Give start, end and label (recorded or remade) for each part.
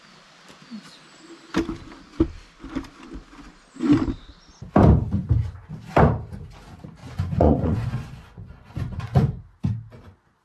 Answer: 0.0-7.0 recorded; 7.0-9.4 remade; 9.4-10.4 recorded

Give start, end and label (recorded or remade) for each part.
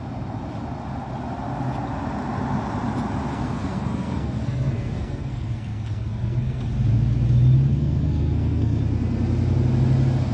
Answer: 0.0-3.3 recorded; 3.3-6.7 remade; 6.7-7.7 recorded; 7.7-8.8 remade; 8.8-10.3 recorded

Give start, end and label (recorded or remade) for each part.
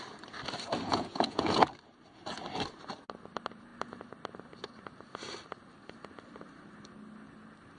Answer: 0.0-0.9 recorded; 0.9-1.6 remade; 1.6-7.8 recorded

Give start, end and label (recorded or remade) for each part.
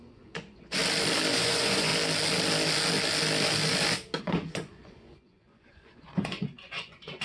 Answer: 0.0-0.8 remade; 0.8-1.3 recorded; 1.3-1.9 remade; 1.9-4.2 recorded; 4.2-7.2 remade